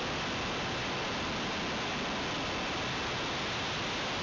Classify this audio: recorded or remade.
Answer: recorded